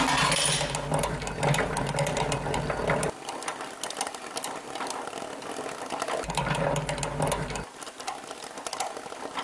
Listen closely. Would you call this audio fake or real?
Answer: real